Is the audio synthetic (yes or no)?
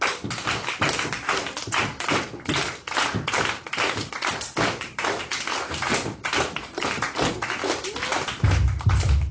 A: no